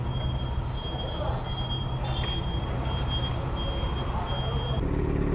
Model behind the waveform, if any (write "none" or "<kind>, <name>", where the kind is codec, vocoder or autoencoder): none